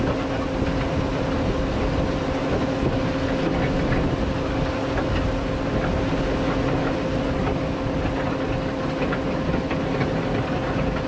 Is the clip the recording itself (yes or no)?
yes